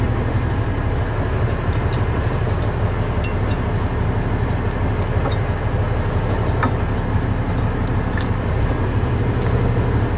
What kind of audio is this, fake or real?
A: real